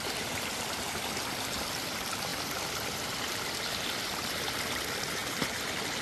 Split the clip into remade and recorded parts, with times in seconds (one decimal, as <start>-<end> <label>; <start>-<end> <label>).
0.0-6.0 remade